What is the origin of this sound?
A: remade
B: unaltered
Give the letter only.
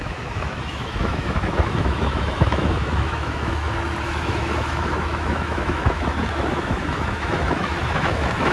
A